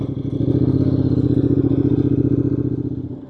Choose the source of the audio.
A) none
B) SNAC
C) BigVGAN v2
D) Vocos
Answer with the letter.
A